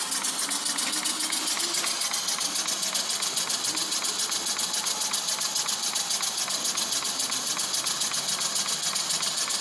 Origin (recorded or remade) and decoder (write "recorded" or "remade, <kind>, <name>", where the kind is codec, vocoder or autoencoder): recorded